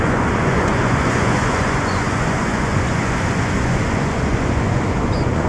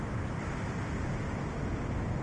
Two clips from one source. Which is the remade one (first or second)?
first